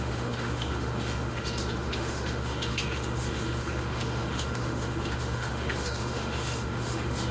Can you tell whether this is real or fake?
fake